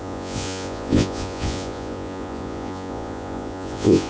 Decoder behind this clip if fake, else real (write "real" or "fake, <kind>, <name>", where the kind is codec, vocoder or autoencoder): fake, vocoder, Vocos